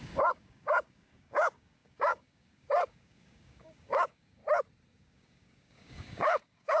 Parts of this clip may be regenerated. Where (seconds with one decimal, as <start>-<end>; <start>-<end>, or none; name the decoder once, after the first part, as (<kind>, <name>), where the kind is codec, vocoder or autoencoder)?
0.0-4.4 (codec, DAC); 4.9-6.8

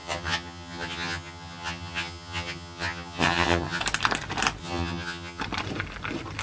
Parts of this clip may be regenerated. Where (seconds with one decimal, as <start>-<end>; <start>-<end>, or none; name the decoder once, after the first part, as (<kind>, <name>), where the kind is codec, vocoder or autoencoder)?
0.0-3.8 (vocoder, HiFi-GAN); 4.6-5.4

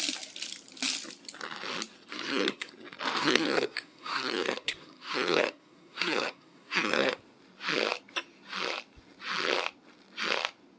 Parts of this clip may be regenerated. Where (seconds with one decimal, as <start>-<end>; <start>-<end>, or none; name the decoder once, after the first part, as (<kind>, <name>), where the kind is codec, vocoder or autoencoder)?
2.1-2.7 (codec, SNAC); 3.2-7.2

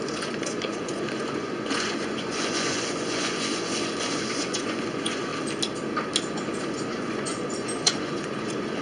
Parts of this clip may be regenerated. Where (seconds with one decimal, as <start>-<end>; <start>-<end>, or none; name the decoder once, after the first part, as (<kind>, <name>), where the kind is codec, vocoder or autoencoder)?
0.0-5.3 (vocoder, Vocos); 6.3-8.8

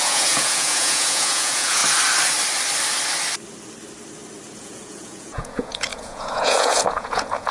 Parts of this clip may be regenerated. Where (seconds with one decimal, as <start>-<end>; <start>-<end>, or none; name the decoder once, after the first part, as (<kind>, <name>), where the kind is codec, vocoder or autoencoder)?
0.0-1.8 (vocoder, Vocos); 4.6-7.5

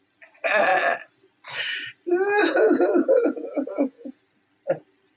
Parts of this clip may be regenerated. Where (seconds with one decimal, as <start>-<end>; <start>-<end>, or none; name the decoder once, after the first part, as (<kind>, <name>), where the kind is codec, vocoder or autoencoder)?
2.4-4.2 (vocoder, Vocos)

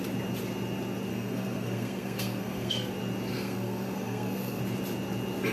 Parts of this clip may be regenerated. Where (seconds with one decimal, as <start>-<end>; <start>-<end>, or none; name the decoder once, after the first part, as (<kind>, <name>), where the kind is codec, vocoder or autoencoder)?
1.1-2.9 (codec, SNAC); 3.3-4.6